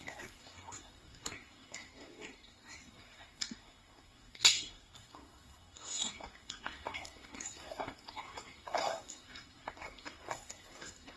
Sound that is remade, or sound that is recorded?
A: remade